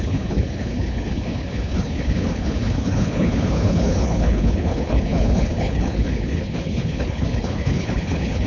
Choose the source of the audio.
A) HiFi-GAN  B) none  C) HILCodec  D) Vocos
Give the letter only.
C